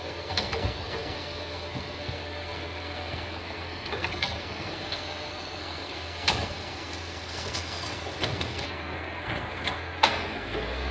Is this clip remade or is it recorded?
remade